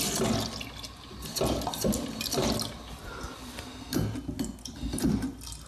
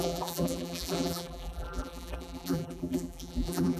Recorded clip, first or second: first